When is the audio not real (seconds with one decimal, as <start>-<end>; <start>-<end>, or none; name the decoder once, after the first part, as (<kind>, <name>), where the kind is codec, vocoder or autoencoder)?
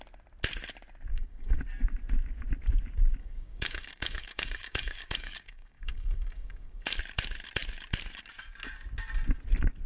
1.1-1.6 (codec, DAC); 3.2-7.0